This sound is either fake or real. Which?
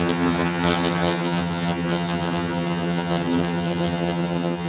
fake